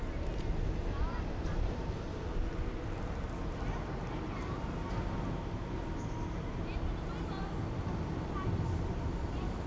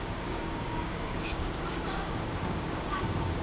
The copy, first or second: second